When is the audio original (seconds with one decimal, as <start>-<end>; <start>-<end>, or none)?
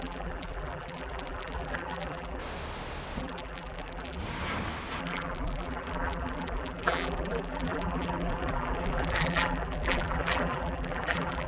2.4-3.2; 4.2-5.0